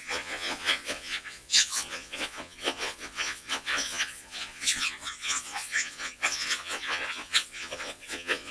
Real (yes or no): no